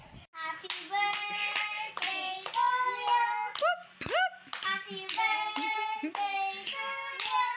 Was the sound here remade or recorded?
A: recorded